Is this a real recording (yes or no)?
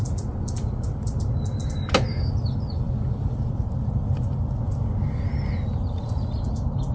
yes